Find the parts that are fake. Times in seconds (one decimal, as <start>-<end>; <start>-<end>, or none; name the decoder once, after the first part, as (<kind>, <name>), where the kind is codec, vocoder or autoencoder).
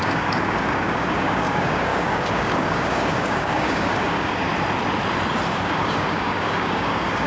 0.0-4.5 (codec, DAC); 5.5-7.3